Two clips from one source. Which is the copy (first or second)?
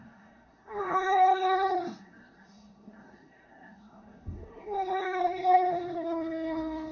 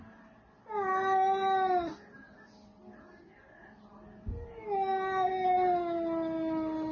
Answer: first